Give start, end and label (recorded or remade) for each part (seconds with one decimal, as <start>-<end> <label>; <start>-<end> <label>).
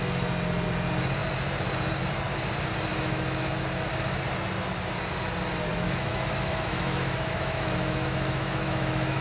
0.0-2.9 recorded; 2.9-3.9 remade; 3.9-5.7 recorded; 5.7-9.2 remade